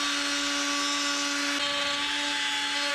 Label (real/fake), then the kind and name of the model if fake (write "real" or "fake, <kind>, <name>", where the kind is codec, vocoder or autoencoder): real